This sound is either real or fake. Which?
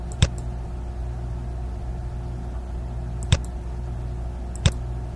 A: real